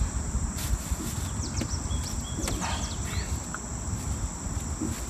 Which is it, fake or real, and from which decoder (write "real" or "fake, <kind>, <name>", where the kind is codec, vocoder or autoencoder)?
real